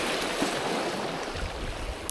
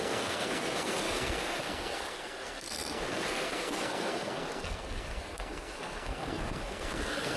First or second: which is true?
first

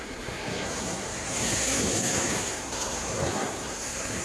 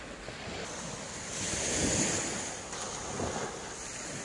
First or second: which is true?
second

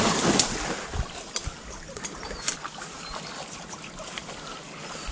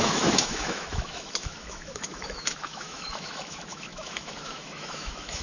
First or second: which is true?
first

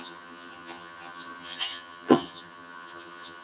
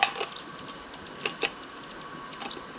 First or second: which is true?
second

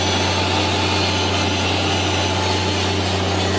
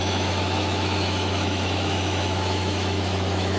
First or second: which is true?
first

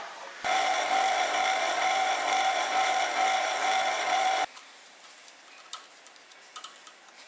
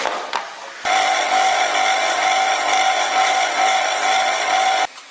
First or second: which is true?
second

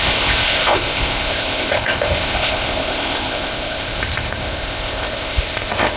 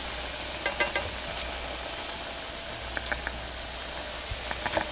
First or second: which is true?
second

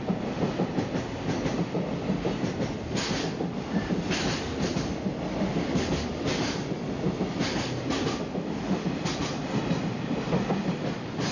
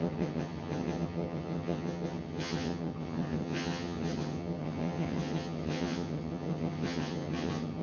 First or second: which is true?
first